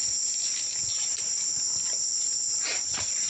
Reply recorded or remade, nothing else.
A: recorded